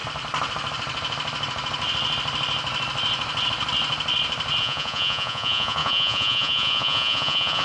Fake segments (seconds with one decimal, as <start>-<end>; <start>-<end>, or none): 4.6-7.6